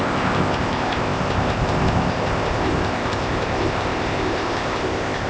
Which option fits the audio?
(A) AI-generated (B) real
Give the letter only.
A